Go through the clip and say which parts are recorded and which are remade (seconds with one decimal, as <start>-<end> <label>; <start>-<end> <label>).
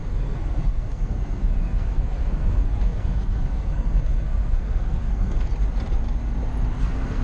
0.0-5.5 remade; 5.5-6.8 recorded; 6.8-7.2 remade